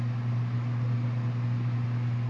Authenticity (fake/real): real